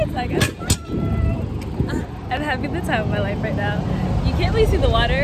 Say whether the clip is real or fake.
real